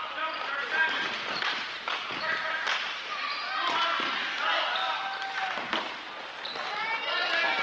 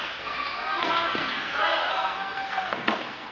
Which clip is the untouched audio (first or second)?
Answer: first